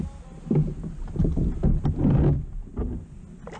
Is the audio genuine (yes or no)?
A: yes